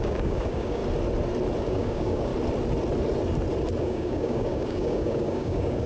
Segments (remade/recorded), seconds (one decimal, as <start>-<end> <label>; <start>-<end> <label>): 0.0-0.8 remade; 0.8-1.6 recorded; 1.6-2.3 remade; 2.3-3.8 recorded; 3.8-5.9 remade